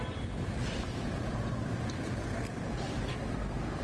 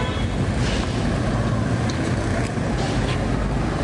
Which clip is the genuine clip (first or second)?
second